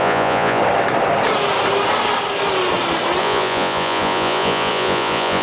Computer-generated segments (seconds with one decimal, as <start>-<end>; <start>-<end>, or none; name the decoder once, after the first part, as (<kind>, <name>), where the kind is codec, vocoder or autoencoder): 0.0-0.6 (vocoder, Vocos); 3.2-5.4